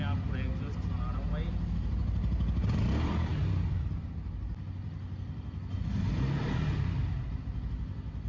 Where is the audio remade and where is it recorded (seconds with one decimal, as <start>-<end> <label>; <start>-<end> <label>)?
0.0-8.3 recorded